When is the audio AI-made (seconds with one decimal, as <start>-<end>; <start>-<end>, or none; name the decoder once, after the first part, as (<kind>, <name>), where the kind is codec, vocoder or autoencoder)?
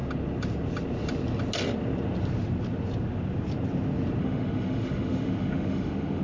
4.2-6.2 (autoencoder, DAC-VAE)